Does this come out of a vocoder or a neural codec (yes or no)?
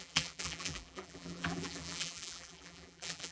yes